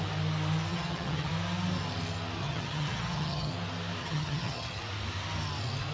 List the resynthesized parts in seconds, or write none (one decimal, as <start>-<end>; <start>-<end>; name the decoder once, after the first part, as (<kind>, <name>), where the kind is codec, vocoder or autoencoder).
0.7-1.3 (vocoder, HiFi-GAN); 2.4-3.5; 4.0-4.8